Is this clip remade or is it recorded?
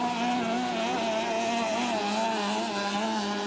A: recorded